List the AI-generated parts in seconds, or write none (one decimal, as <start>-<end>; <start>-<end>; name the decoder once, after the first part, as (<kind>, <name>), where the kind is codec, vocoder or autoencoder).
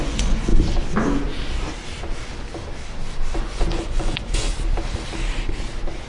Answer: 0.0-0.5 (vocoder, Vocos); 3.4-4.5